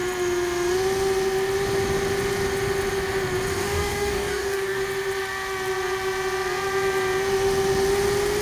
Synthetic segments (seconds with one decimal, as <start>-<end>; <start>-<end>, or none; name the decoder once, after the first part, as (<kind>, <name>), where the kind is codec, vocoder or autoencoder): 3.6-4.8 (codec, DAC)